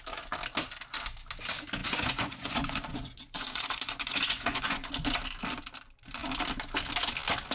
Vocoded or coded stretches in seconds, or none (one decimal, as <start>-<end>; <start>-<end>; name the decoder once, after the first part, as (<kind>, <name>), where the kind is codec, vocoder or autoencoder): 1.8-4.9 (vocoder, Vocos)

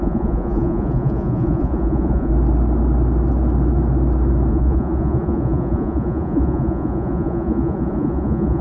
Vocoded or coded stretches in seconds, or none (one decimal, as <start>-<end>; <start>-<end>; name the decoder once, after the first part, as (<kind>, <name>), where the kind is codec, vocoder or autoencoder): 0.0-2.3 (vocoder, Vocos); 4.5-8.6

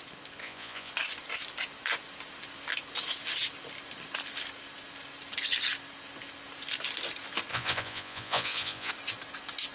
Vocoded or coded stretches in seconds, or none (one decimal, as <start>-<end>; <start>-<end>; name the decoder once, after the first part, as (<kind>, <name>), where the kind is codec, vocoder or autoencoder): 0.4-0.9 (vocoder, Vocos); 7.5-8.9

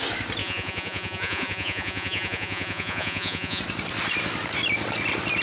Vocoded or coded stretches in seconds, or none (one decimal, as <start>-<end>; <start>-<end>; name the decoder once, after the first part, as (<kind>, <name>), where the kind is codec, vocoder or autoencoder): 0.4-3.6 (vocoder, Vocos)

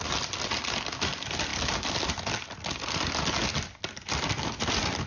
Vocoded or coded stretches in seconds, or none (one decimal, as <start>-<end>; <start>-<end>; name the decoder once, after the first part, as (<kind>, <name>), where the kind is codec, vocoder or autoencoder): none

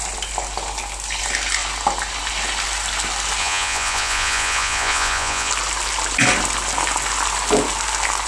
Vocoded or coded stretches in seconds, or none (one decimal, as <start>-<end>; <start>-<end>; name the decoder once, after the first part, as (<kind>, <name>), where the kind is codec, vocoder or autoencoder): 3.4-5.5 (vocoder, Vocos)

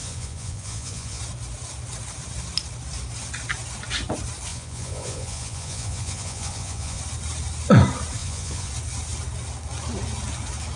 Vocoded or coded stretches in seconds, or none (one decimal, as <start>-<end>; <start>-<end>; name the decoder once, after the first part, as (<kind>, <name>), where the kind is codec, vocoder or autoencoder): 0.0-1.2 (vocoder, Vocos); 4.5-7.0; 8.2-8.7

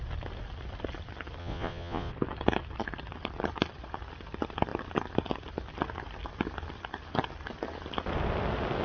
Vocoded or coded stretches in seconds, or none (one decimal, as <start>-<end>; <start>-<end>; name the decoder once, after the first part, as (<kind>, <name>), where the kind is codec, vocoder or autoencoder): 1.4-2.1 (vocoder, Vocos)